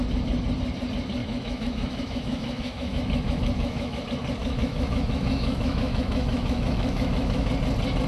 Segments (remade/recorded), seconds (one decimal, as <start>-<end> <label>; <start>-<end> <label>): 0.0-1.2 recorded; 1.2-4.0 remade; 4.0-4.4 recorded; 4.4-7.5 remade; 7.5-8.1 recorded